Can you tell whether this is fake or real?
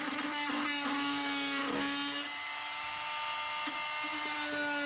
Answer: real